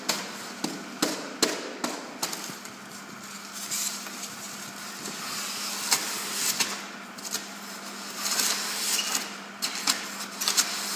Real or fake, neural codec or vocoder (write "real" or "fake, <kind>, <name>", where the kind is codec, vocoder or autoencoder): real